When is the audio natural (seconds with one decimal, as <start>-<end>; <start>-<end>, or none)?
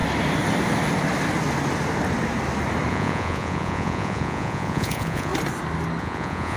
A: 0.0-2.9; 5.3-6.0